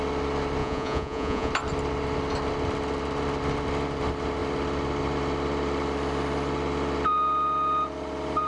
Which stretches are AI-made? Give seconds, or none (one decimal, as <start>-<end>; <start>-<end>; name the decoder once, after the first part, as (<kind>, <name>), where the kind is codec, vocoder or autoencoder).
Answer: 0.6-1.5 (vocoder, Vocos)